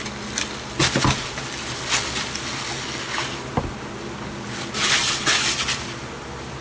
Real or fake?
real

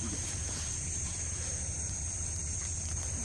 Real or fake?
fake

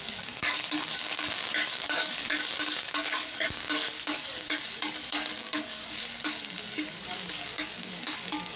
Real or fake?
fake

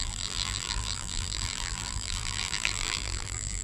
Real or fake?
fake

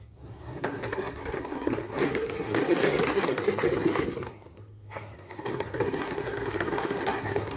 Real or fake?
fake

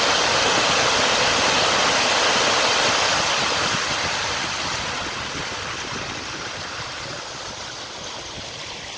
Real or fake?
real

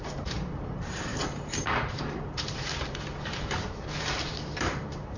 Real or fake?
fake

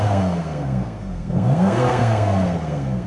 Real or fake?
fake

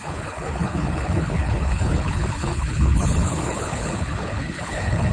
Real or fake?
fake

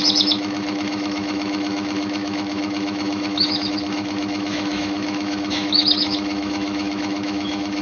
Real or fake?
fake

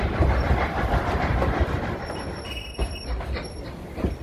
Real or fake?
fake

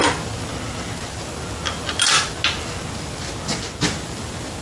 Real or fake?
real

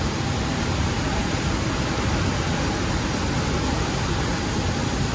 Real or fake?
real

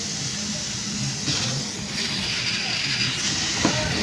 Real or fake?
real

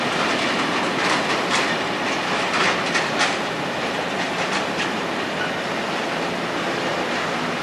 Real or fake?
real